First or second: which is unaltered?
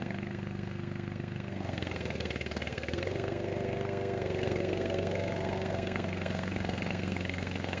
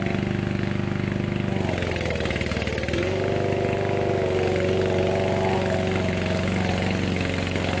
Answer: second